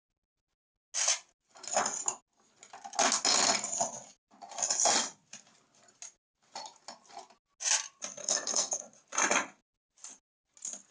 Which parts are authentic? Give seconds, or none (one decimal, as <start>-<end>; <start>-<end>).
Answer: 0.0-8.2; 8.8-10.9